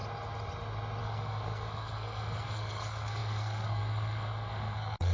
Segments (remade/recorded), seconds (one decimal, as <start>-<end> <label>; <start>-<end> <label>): 0.0-1.0 recorded; 1.0-5.1 remade